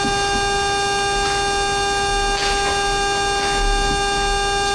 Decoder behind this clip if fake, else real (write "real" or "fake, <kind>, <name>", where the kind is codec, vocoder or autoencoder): real